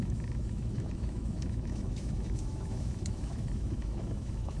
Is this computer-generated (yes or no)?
yes